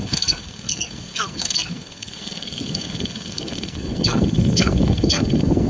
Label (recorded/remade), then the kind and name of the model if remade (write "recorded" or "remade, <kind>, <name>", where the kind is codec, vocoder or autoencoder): remade, codec, SNAC